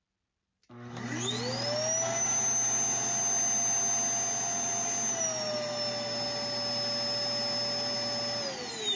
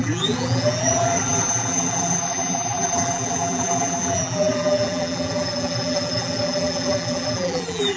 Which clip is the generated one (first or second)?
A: second